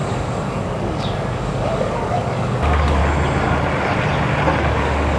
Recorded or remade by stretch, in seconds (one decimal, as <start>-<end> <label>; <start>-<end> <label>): 0.0-3.0 remade; 3.0-4.6 recorded; 4.6-5.2 remade